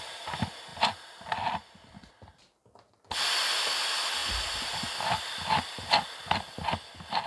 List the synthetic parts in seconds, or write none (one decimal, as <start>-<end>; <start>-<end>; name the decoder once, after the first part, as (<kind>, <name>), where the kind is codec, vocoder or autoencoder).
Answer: none